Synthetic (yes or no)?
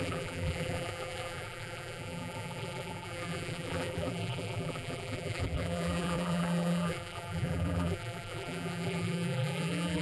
yes